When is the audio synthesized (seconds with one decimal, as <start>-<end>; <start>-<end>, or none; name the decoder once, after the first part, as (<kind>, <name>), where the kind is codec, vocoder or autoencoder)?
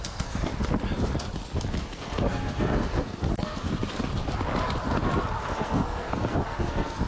0.0-0.5 (codec, SNAC); 1.8-3.7; 5.4-7.1